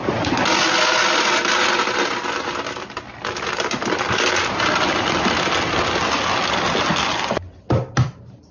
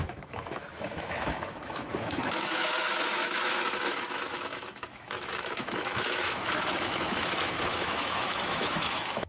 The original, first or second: first